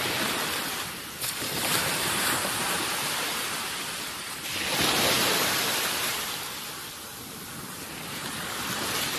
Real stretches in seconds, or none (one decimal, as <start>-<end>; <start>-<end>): 6.1-6.7

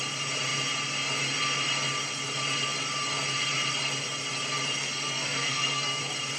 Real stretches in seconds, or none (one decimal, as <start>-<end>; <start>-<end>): 0.0-4.8; 6.0-6.4

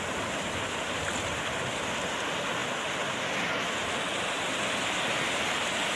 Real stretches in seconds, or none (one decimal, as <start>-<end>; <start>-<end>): 0.0-6.0